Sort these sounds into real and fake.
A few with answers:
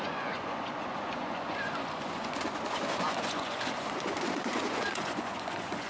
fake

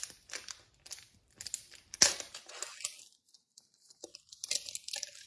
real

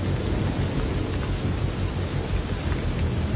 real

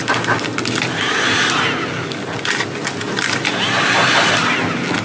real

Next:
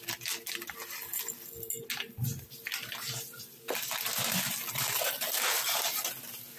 real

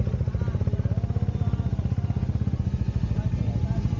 real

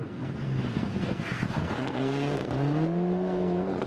fake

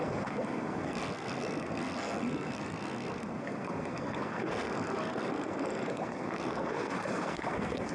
fake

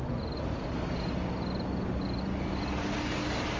real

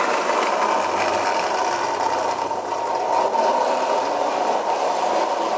real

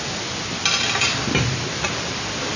real